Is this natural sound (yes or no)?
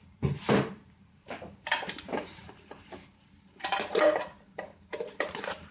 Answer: no